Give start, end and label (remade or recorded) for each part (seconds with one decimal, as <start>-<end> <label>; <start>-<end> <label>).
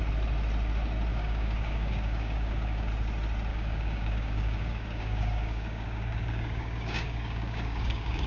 0.0-1.1 recorded; 1.1-2.9 remade; 2.9-3.5 recorded; 3.5-8.3 remade